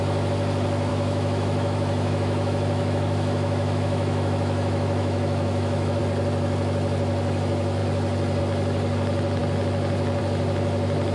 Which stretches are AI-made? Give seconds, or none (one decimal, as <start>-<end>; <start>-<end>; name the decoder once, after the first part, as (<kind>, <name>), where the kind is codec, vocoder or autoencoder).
0.9-6.0 (autoencoder, DAC-VAE)